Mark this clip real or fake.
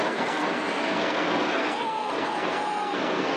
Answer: fake